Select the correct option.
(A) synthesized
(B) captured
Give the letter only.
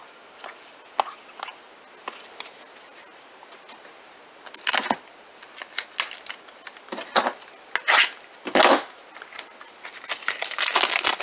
B